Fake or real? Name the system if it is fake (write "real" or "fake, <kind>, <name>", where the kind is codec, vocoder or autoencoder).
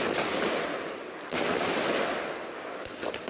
real